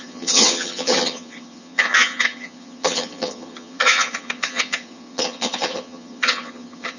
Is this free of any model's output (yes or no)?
no